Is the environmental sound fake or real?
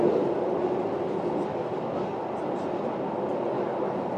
real